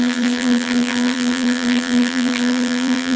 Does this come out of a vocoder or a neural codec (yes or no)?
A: yes